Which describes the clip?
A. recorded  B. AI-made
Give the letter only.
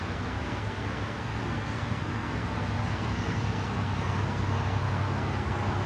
B